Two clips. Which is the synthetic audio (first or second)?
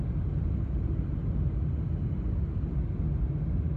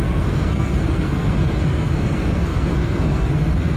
second